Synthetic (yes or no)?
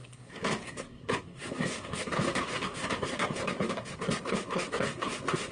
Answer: yes